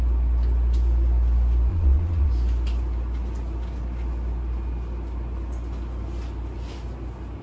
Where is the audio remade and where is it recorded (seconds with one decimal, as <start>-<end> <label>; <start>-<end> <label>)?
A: 0.0-1.7 recorded; 1.7-2.3 remade; 2.3-7.4 recorded